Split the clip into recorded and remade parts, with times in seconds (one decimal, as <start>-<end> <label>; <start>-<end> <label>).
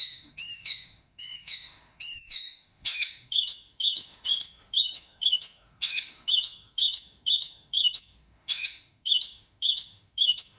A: 0.0-10.6 remade